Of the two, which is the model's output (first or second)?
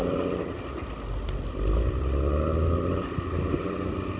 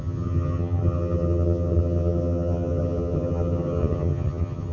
second